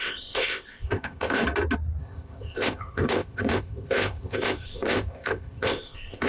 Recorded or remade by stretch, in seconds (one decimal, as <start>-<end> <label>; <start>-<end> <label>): 0.0-1.4 remade; 1.4-2.0 recorded; 2.0-6.3 remade